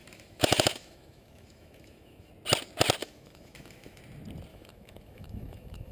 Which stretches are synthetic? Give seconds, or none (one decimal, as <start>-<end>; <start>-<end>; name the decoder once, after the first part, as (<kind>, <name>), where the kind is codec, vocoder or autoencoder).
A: 0.0-2.3 (autoencoder, DAC-VAE); 3.0-4.0; 4.5-5.9